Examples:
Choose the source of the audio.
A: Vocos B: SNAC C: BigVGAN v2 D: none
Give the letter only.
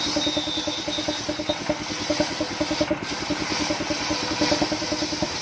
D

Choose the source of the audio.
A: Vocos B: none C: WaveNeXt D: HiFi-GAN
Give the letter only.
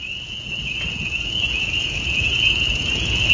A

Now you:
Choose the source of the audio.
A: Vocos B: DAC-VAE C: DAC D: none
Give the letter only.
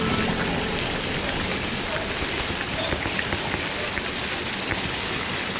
D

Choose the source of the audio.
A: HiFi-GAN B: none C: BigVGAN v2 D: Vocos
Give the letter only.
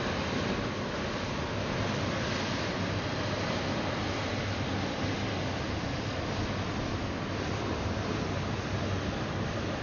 B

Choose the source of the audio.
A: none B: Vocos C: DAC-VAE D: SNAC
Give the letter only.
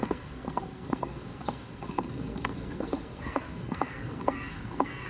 D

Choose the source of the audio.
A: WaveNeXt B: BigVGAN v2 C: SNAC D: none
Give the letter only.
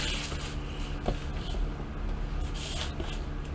D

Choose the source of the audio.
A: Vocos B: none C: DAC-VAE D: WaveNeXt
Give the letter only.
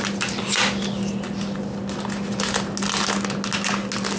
B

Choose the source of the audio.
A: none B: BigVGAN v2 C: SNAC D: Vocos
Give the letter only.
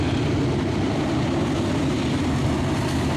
B